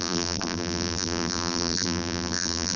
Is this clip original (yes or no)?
no